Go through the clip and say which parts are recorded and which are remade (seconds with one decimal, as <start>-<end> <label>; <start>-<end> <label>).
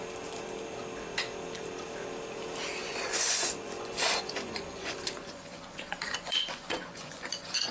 0.0-2.8 recorded; 2.8-7.7 remade